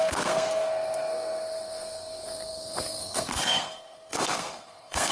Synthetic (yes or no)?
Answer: yes